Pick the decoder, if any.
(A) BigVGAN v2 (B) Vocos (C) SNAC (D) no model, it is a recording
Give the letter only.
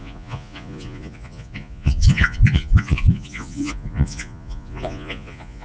B